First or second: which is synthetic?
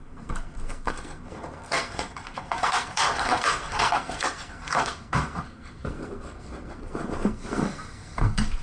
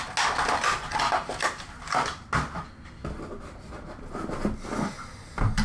first